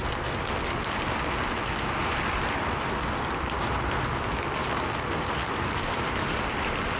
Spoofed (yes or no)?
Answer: no